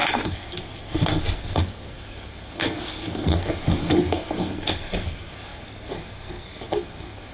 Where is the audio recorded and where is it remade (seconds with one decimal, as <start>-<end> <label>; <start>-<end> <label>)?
0.0-7.3 remade